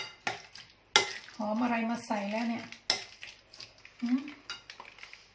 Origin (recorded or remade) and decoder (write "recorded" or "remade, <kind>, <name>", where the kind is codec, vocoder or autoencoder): recorded